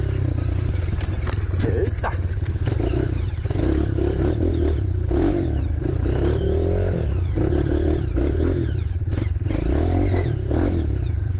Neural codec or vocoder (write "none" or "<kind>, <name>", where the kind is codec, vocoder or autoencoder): none